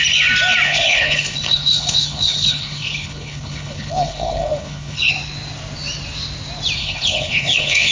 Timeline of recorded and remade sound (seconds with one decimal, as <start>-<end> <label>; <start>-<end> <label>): 0.0-0.7 recorded; 0.7-5.1 remade; 5.1-6.8 recorded; 6.8-7.9 remade